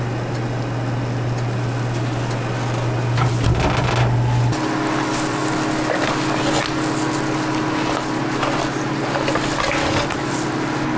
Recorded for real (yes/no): yes